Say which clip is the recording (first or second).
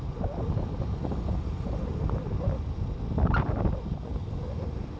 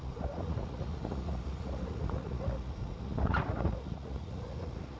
first